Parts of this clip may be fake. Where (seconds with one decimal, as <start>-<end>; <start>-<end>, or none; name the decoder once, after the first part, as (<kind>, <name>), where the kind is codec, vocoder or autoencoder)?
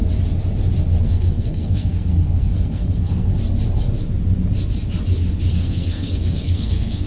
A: 1.0-3.3 (codec, SNAC); 5.5-7.1